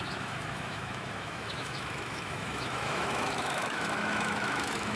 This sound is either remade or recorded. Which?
remade